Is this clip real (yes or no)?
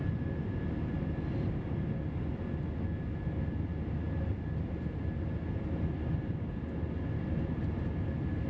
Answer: yes